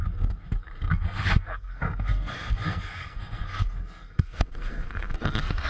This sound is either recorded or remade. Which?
remade